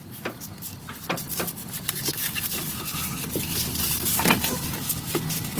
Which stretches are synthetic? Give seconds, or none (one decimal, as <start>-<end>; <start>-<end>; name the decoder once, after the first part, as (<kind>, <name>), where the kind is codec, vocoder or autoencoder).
1.6-4.7 (vocoder, BigVGAN v2)